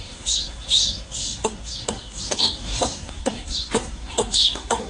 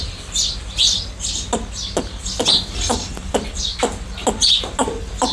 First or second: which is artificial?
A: first